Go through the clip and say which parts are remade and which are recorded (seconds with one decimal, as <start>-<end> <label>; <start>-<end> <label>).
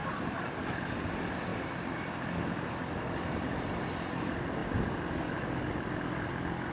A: 0.0-0.9 remade; 0.9-1.5 recorded; 1.5-2.6 remade; 2.6-6.7 recorded